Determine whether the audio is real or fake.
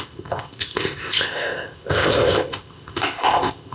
fake